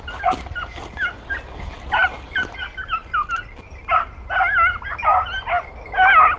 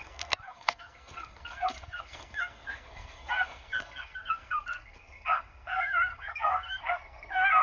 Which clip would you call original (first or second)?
first